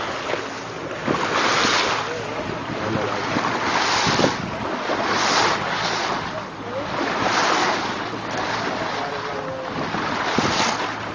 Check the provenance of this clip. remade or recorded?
recorded